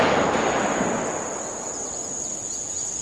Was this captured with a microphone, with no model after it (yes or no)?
yes